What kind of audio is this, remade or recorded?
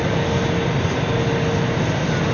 recorded